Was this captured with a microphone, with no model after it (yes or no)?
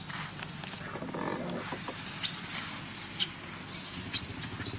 yes